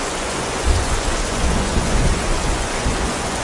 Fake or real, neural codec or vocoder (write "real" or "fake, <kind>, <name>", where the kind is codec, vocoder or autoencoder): fake, vocoder, Vocos